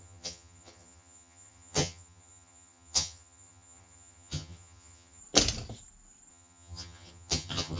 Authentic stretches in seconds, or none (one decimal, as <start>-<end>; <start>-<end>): 5.2-6.3